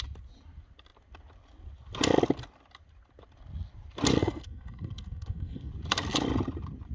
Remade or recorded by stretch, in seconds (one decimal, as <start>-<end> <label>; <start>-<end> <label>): 0.0-4.2 recorded; 4.2-5.7 remade; 5.7-6.9 recorded